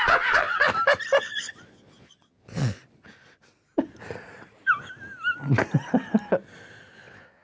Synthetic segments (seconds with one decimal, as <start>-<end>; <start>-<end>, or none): 0.0-0.7; 1.2-2.8; 6.9-7.4